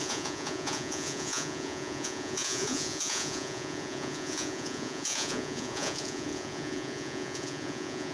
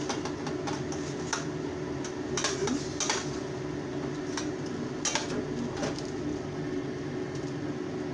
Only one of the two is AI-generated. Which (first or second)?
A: first